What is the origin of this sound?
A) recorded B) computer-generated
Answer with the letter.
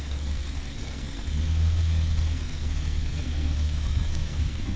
B